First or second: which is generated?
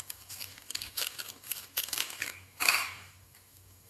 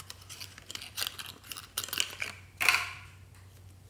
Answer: first